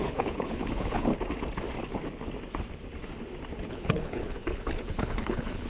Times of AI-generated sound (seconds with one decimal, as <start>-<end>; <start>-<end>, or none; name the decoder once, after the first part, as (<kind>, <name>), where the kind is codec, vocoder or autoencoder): 0.0-1.1 (codec, HILCodec); 3.7-5.7